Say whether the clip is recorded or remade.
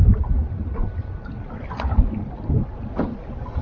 recorded